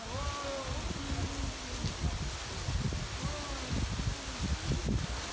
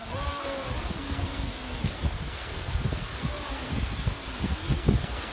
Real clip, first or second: first